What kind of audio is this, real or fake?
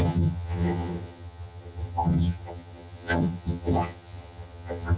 fake